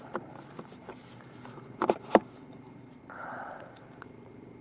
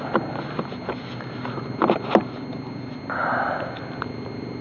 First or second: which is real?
second